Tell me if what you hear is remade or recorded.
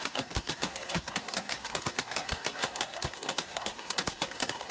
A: remade